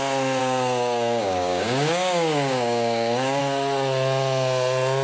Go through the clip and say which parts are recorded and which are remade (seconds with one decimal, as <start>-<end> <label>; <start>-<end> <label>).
0.0-0.4 recorded; 0.4-3.4 remade; 3.4-5.0 recorded